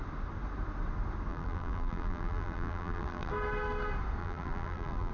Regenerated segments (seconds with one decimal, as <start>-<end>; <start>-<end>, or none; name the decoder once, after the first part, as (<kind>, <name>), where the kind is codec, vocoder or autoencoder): 1.3-3.3 (vocoder, BigVGAN v2); 4.2-5.1